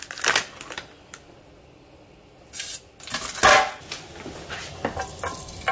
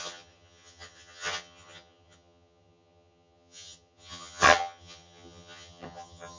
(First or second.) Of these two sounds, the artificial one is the second